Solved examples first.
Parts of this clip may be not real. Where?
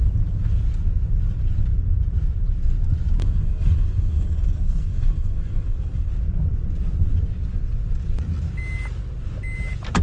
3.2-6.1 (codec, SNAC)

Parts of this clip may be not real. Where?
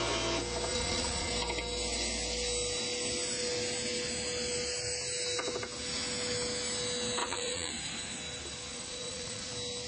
0.7-1.3 (vocoder, Vocos); 7.2-7.7; 8.7-9.5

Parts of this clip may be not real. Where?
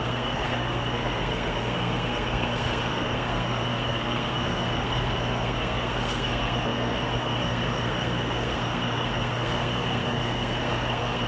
0.0-11.3 (codec, SNAC)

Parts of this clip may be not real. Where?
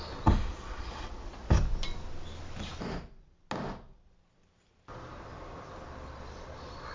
0.5-1.5 (vocoder, Vocos)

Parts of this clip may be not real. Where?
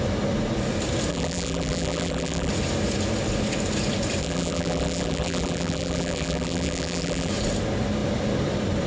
1.1-2.5 (vocoder, BigVGAN v2); 4.2-7.3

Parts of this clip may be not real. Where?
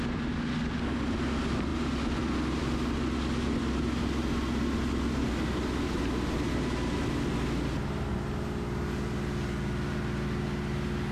none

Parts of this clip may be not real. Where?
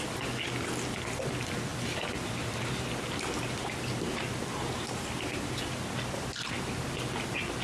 1.7-5.8 (vocoder, BigVGAN v2)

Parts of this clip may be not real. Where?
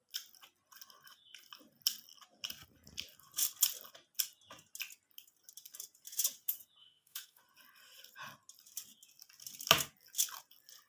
6.8-7.4 (autoencoder, DAC-VAE)